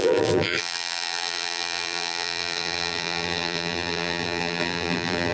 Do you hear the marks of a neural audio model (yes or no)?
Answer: yes